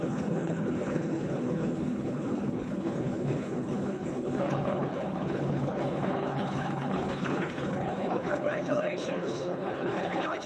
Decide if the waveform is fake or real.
fake